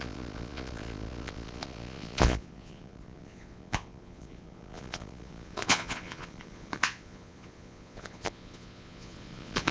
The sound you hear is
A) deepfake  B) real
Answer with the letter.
A